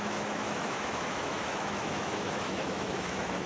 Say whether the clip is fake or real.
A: fake